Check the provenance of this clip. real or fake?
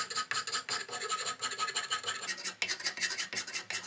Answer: real